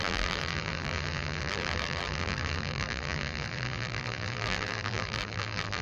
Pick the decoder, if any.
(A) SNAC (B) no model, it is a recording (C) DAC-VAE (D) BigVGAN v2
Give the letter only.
D